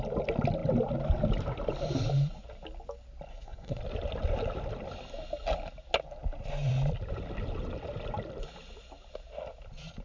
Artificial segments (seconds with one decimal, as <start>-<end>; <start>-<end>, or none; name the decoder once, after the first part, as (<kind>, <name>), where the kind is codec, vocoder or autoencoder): 3.3-3.8 (codec, SNAC)